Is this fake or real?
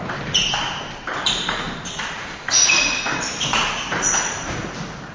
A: fake